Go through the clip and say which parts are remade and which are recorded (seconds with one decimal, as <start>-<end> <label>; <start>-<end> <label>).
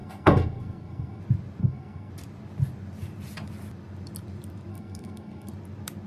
0.0-1.2 remade; 1.2-1.6 recorded; 1.6-2.1 remade; 2.1-4.7 recorded; 4.7-5.5 remade; 5.5-6.1 recorded